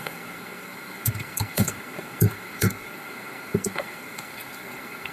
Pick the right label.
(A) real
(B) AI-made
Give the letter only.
B